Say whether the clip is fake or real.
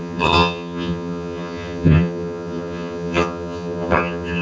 fake